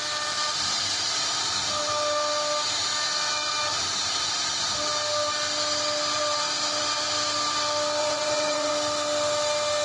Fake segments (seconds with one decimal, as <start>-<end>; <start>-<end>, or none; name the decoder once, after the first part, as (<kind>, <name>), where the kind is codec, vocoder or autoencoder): 8.0-8.7 (vocoder, WaveNeXt)